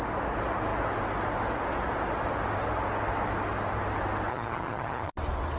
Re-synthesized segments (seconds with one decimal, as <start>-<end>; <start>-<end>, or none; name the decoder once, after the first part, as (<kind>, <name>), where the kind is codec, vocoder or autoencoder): 4.3-5.1 (vocoder, HiFi-GAN)